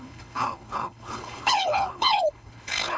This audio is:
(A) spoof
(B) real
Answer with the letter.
A